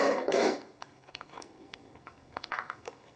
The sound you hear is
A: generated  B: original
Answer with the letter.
A